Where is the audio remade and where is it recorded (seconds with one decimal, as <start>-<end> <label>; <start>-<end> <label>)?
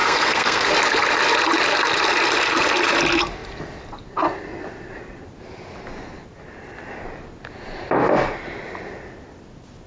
0.0-0.7 remade; 0.7-9.9 recorded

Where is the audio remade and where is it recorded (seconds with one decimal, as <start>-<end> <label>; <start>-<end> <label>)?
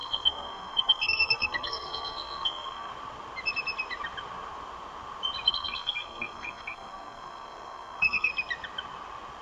0.0-2.9 remade; 2.9-5.5 recorded; 5.5-8.3 remade; 8.3-9.4 recorded